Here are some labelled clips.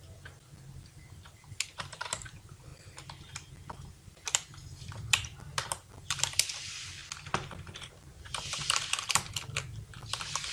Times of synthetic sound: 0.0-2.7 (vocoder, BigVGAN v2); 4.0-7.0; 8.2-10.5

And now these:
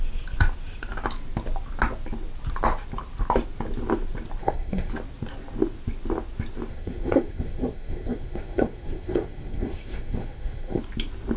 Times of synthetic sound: 4.4-4.9 (codec, SNAC); 6.7-10.8